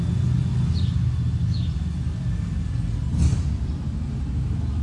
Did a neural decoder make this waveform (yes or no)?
no